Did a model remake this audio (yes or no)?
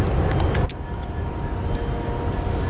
no